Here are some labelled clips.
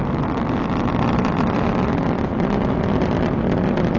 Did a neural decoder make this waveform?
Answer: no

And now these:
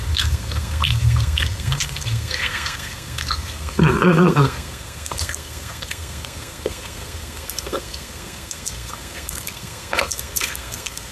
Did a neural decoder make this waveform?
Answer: yes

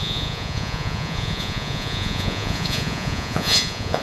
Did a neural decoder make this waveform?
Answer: yes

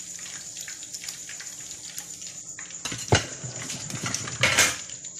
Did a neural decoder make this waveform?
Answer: no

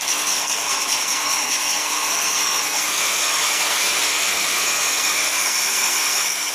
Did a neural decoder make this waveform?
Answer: yes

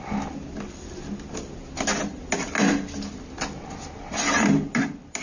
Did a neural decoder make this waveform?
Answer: no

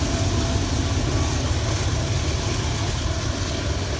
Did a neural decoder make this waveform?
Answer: no